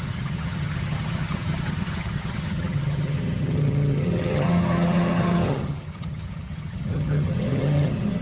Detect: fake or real fake